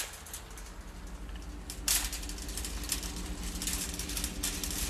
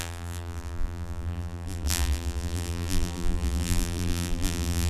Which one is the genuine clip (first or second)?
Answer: first